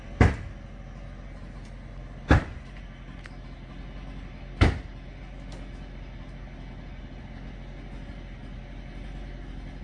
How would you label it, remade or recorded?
recorded